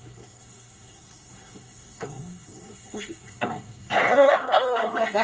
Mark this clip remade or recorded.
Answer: remade